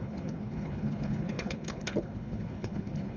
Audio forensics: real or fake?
fake